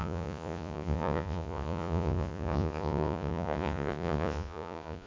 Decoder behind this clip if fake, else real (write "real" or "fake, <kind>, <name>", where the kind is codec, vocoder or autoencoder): fake, vocoder, Vocos